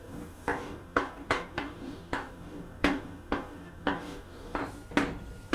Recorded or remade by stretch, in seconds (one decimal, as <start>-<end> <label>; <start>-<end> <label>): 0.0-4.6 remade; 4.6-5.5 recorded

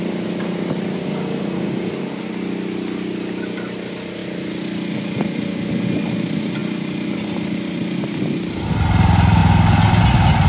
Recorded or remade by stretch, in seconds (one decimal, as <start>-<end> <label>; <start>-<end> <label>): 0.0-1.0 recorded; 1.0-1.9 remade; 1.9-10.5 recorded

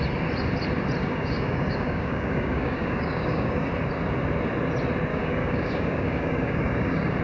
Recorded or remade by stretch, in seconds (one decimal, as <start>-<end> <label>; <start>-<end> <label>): 0.0-1.0 recorded; 1.0-3.7 remade; 3.7-5.1 recorded; 5.1-7.2 remade

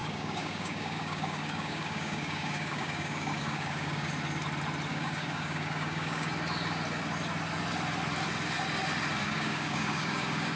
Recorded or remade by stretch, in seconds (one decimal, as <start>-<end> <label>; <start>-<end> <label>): 0.0-4.1 remade; 4.1-4.9 recorded; 4.9-6.3 remade; 6.3-9.2 recorded; 9.2-10.6 remade

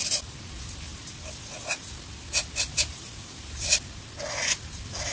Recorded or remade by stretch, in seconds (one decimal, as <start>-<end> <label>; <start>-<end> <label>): 0.0-5.1 recorded

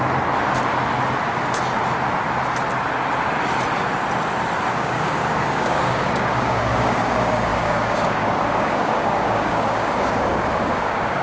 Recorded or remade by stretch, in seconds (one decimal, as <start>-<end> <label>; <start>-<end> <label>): 0.0-4.7 recorded; 4.7-11.2 remade

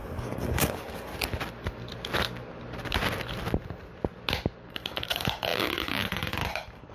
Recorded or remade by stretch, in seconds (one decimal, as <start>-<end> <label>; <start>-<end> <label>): 0.0-1.1 remade; 1.1-4.7 recorded; 4.7-6.9 remade